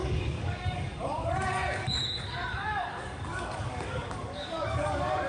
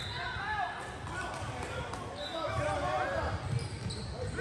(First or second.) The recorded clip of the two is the second